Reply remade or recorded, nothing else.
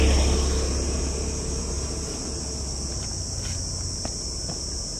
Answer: recorded